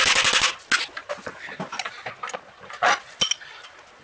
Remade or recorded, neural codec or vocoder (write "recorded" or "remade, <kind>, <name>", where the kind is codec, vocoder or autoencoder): recorded